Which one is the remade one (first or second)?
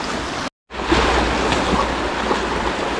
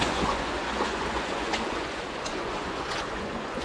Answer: second